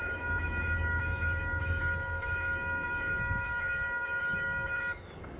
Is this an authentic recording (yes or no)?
no